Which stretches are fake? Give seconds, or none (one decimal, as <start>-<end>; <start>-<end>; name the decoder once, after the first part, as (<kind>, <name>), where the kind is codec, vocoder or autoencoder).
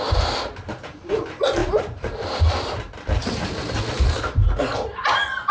1.6-2.7 (vocoder, BigVGAN v2)